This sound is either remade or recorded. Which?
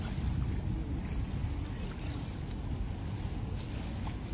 recorded